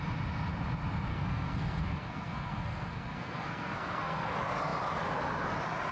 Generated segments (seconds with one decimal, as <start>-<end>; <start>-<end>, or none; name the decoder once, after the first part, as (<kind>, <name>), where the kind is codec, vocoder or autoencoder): 1.1-4.3 (codec, SNAC)